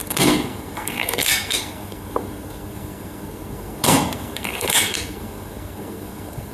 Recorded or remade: remade